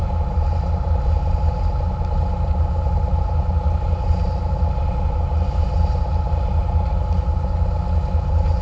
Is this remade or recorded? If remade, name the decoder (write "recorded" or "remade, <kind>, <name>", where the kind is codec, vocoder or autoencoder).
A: recorded